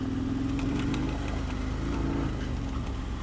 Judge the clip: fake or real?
real